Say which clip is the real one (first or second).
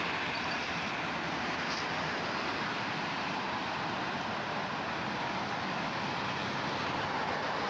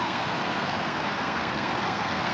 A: first